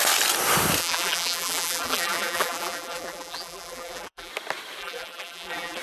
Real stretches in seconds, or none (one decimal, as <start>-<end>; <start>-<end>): 0.0-0.8; 4.3-4.8